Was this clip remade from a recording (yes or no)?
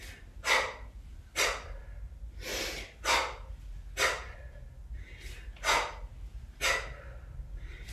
no